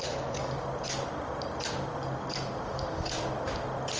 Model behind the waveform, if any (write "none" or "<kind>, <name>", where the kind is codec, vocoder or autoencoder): none